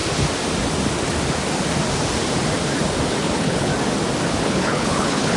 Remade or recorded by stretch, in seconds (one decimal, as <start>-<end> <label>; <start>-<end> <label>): 0.0-3.2 recorded; 3.2-3.7 remade; 3.7-4.4 recorded; 4.4-5.4 remade